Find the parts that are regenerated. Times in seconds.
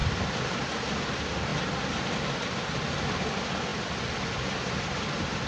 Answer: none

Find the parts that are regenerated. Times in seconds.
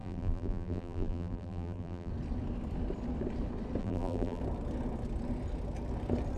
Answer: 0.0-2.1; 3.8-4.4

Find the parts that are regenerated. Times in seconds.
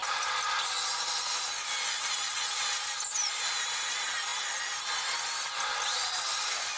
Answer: none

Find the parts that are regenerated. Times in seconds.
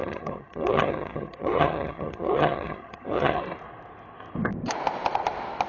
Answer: 0.0-3.4